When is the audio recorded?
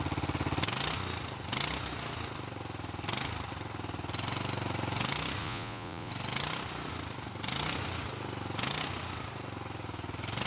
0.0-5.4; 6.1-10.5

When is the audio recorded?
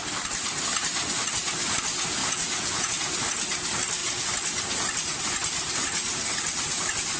0.0-2.2; 3.0-7.2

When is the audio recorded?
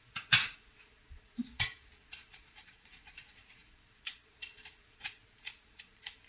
none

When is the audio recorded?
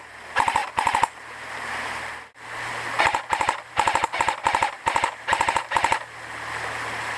0.0-7.2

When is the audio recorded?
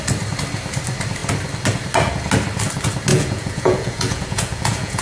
0.0-3.1